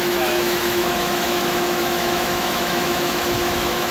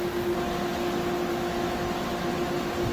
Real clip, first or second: second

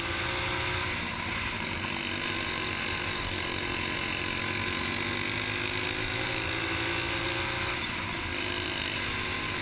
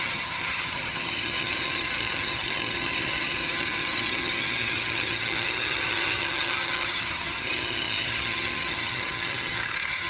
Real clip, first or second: first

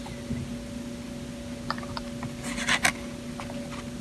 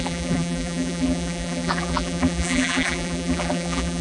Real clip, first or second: first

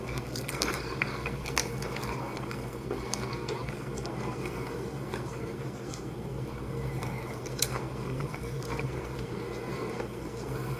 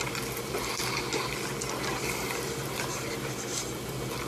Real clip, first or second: second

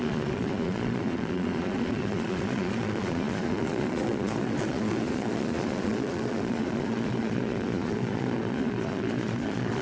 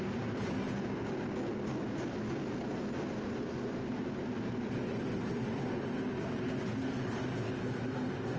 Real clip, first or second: second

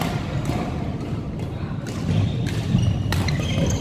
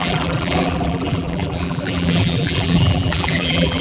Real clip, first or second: first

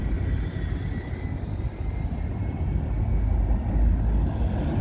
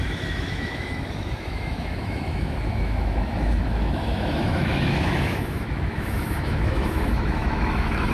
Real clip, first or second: first